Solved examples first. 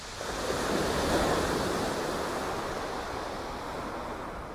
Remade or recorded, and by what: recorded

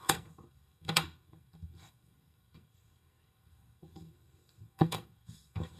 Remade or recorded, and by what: remade, codec, SNAC